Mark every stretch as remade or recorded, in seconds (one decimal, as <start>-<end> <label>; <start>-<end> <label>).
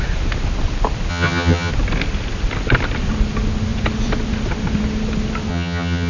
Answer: 0.0-1.1 recorded; 1.1-1.7 remade; 1.7-5.5 recorded; 5.5-6.1 remade